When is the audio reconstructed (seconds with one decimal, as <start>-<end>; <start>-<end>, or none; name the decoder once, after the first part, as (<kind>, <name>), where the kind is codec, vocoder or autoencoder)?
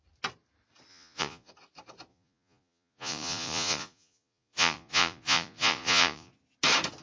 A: 0.9-1.5 (vocoder, Vocos); 2.1-6.3